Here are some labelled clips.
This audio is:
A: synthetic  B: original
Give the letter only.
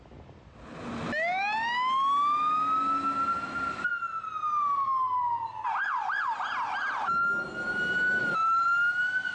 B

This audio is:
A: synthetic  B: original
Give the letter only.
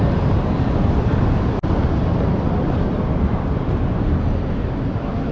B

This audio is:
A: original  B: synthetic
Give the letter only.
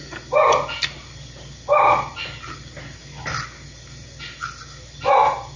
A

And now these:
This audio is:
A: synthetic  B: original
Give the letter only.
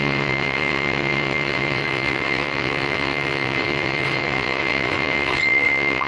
A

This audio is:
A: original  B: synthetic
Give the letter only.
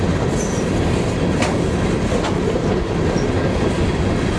A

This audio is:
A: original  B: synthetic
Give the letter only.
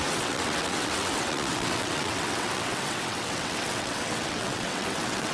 B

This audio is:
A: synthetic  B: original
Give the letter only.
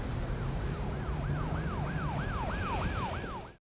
B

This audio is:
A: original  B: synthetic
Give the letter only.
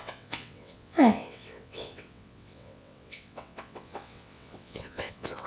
B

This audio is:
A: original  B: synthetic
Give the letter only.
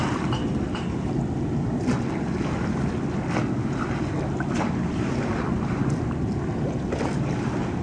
A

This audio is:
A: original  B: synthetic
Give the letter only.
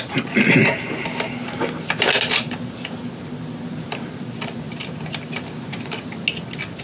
A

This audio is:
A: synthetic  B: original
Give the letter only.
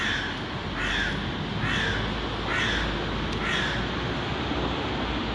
B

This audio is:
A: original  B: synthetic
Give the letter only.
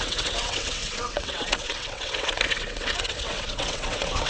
B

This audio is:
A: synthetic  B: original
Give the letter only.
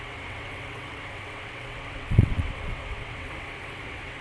A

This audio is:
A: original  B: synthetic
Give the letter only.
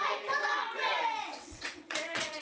B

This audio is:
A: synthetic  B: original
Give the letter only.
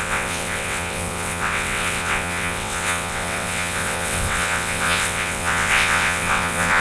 A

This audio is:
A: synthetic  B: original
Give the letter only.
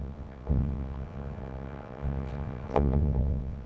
A